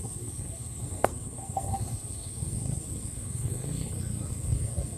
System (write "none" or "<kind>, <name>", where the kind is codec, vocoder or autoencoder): codec, SNAC